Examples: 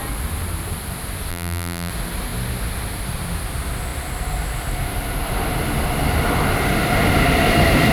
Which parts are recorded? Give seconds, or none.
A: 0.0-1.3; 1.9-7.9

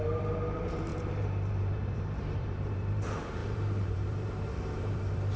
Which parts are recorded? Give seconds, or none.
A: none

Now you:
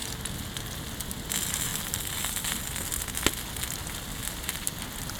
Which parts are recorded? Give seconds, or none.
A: 0.0-1.7; 3.0-5.2